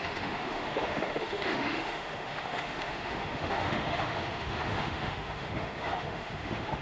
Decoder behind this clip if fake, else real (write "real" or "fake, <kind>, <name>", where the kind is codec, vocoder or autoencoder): fake, autoencoder, DAC-VAE